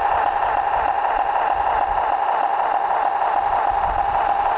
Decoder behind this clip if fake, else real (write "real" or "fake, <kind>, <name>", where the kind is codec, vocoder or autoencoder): real